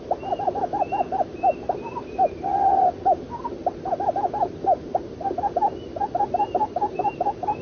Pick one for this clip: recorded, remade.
recorded